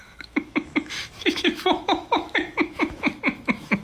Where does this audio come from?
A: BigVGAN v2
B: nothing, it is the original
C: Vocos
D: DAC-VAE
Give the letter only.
D